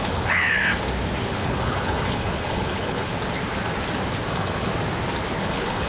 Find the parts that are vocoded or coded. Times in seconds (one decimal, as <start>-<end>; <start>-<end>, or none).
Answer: 0.0-0.6; 1.3-3.1; 4.3-4.7; 5.4-5.9